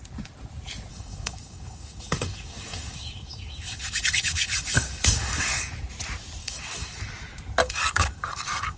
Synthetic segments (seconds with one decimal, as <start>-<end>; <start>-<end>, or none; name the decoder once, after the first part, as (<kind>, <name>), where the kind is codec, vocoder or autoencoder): 0.9-5.7 (codec, DAC); 6.4-7.0; 7.6-8.8